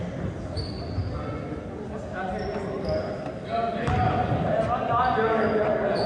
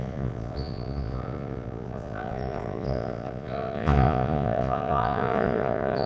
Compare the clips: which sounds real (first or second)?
first